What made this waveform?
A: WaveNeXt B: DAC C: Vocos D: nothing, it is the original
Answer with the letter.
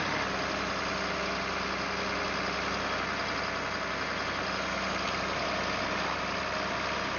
D